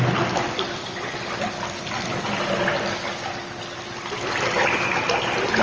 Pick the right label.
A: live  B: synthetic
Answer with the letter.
A